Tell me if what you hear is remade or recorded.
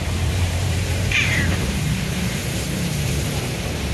remade